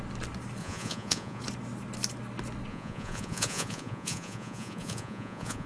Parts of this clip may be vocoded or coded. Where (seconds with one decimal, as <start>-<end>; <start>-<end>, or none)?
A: 0.6-1.4; 2.7-5.7